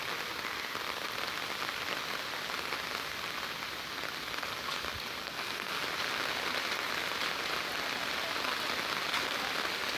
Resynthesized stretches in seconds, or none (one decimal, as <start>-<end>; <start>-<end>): 5.2-5.8